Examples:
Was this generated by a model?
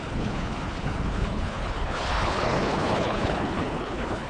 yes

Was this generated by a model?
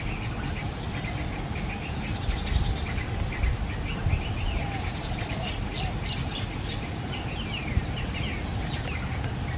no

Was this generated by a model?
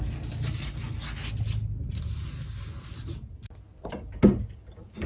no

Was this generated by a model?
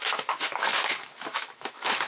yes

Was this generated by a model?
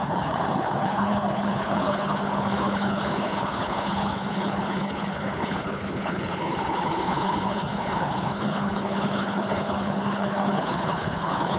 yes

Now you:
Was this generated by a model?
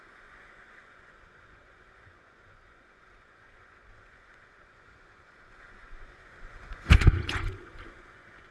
yes